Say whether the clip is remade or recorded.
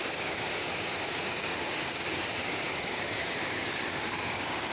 remade